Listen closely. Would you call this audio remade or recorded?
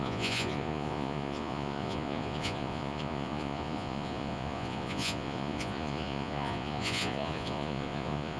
remade